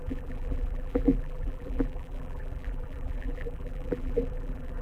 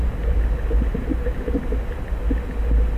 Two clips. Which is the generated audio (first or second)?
first